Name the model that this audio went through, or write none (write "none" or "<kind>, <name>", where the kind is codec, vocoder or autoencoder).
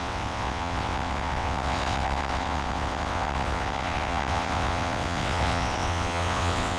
vocoder, WaveNeXt